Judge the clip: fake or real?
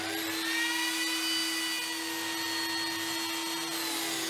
real